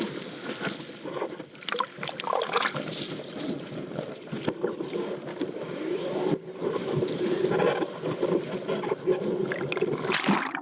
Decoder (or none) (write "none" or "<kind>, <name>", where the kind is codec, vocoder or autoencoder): none